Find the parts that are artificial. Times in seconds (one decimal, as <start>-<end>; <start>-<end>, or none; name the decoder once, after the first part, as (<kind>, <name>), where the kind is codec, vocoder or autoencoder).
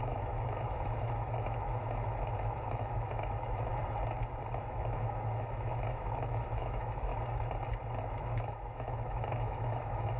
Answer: 0.0-3.7 (autoencoder, DAC-VAE); 4.6-7.1; 8.0-10.2